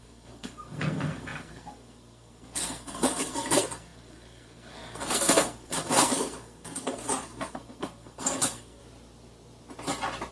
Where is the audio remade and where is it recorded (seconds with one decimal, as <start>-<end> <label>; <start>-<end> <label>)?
0.0-8.8 remade; 8.8-10.3 recorded